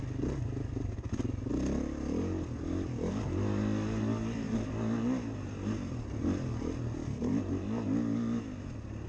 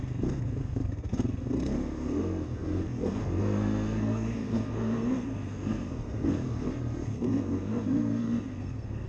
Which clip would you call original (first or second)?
first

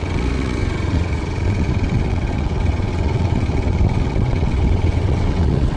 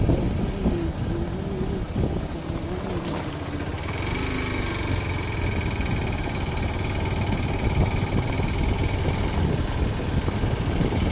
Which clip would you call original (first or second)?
second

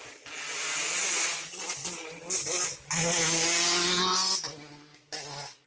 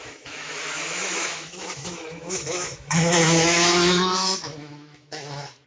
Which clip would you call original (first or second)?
first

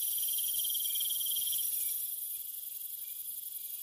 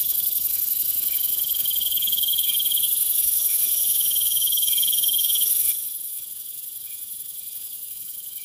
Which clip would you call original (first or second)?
first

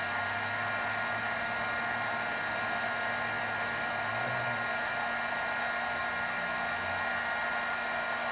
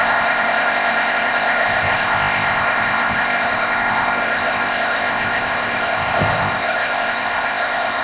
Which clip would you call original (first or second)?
first